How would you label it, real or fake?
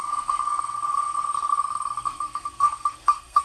fake